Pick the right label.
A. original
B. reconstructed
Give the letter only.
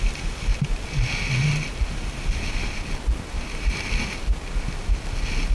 A